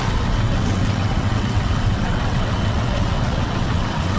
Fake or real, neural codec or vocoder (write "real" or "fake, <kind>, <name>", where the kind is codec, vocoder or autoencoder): fake, vocoder, WaveNeXt